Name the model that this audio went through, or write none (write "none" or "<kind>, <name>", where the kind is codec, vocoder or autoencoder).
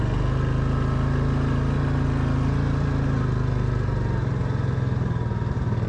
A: none